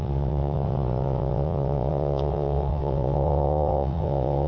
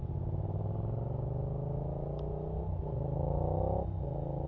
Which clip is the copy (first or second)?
first